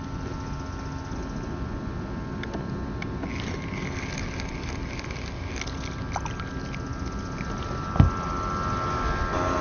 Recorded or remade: recorded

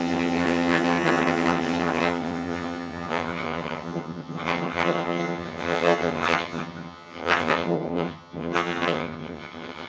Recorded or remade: remade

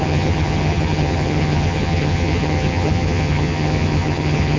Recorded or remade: remade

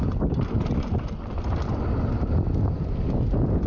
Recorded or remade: recorded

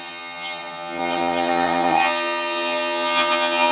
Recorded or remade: remade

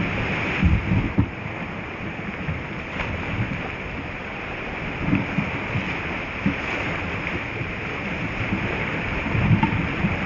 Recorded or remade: recorded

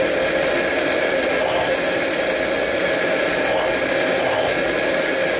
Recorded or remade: recorded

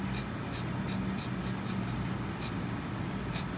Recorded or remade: recorded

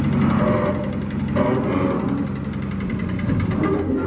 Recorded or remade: recorded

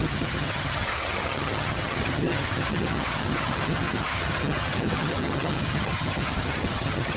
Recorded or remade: remade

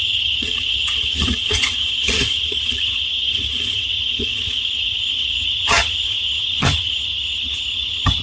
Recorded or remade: remade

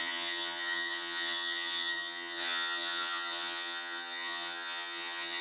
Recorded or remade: remade